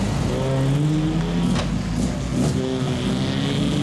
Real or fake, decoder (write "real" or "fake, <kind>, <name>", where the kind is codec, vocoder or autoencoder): real